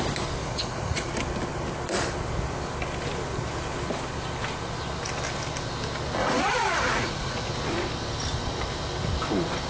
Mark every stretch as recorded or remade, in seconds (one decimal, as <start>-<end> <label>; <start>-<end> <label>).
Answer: 0.0-0.4 recorded; 0.4-1.1 remade; 1.1-6.2 recorded; 6.2-7.5 remade; 7.5-9.7 recorded